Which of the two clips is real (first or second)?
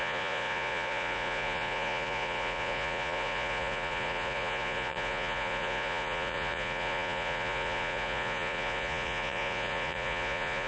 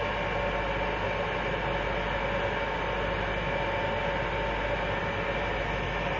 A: second